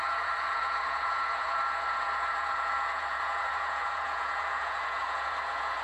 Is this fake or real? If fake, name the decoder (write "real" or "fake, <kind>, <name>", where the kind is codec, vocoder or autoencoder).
fake, vocoder, Vocos